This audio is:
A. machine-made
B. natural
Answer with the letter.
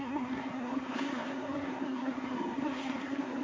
A